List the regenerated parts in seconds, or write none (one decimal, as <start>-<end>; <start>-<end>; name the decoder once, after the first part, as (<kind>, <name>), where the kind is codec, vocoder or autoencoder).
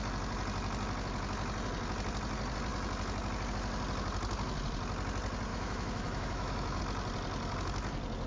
5.5-6.8 (autoencoder, DAC-VAE)